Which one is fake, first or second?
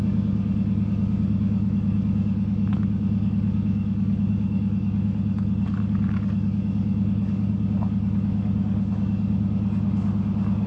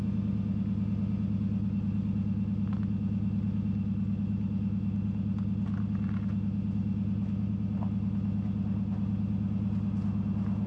first